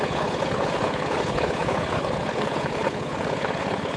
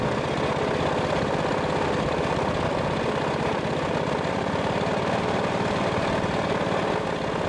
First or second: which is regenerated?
first